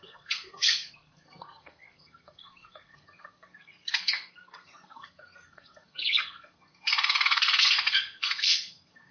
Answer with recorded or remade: remade